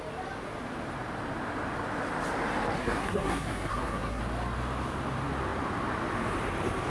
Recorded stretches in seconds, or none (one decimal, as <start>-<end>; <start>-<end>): 0.0-2.8; 4.2-6.9

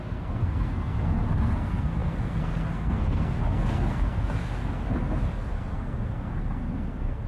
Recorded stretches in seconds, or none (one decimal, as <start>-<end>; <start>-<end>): none

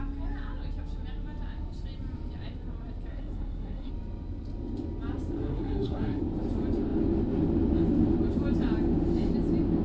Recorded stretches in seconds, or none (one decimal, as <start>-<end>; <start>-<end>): 0.0-3.1; 3.9-5.4; 6.2-9.8

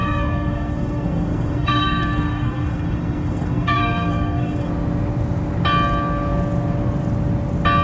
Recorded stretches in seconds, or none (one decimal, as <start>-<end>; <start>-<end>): 4.7-7.8

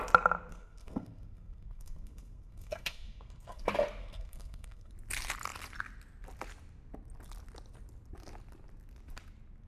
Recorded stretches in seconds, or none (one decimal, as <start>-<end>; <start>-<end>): 0.0-0.5; 3.6-4.0; 4.9-9.7

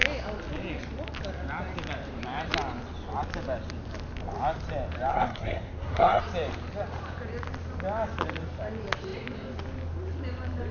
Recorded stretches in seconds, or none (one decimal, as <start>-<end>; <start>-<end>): 0.0-5.1; 6.2-10.7

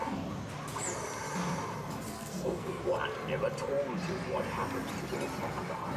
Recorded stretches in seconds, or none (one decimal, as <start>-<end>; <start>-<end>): 0.0-2.1; 2.8-6.0

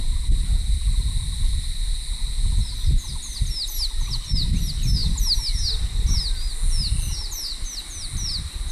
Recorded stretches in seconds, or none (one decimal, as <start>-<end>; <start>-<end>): 0.0-8.7